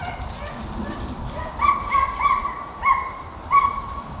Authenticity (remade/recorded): remade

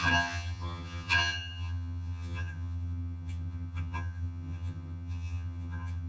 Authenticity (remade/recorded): remade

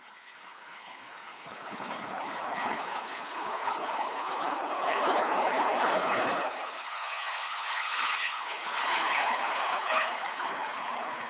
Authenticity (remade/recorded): remade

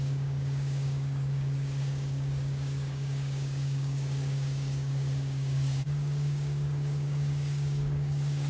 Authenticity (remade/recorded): remade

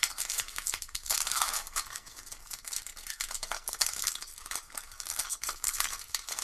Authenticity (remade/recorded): remade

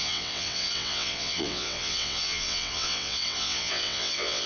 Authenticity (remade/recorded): remade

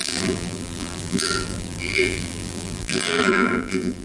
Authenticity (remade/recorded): remade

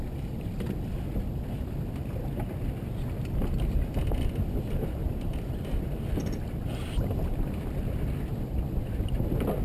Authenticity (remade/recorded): recorded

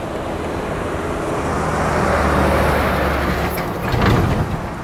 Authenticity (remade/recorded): recorded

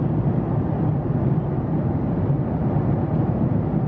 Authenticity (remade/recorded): recorded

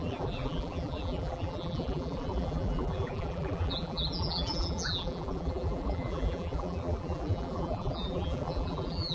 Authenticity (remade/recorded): remade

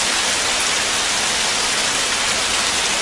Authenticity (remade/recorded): recorded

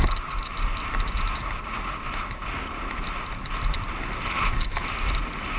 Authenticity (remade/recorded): recorded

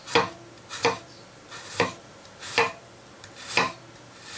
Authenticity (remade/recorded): recorded